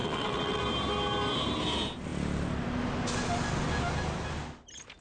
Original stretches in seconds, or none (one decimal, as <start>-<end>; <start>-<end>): 0.6-5.0